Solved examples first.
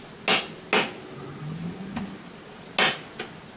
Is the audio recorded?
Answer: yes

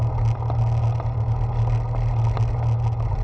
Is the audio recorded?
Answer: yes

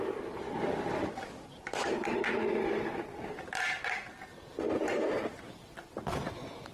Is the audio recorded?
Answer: yes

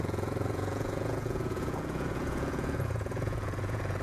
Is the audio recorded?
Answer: no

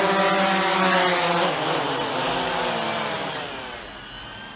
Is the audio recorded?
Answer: yes